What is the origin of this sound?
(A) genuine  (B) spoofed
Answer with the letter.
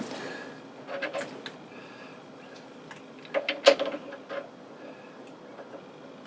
A